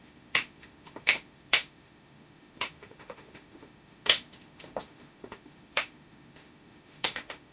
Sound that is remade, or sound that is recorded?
remade